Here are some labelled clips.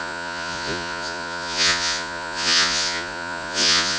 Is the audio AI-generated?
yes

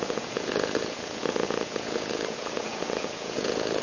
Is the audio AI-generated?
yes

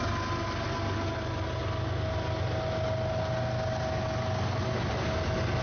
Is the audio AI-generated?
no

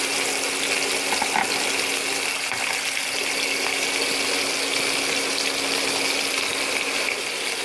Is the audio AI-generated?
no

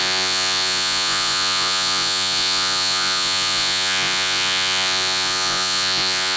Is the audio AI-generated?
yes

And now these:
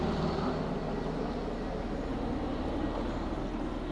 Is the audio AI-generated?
no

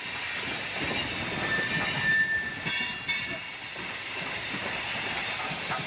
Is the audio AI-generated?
no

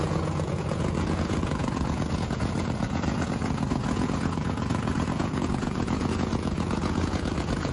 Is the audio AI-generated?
yes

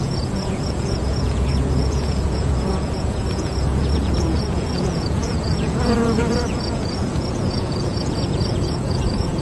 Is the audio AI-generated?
yes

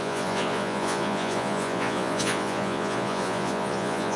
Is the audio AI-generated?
yes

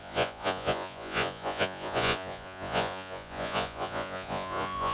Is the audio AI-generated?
yes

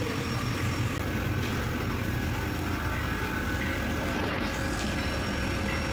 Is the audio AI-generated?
no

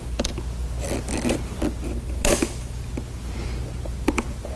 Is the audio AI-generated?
no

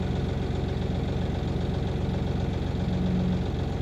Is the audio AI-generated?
no